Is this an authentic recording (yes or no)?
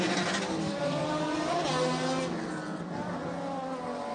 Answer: yes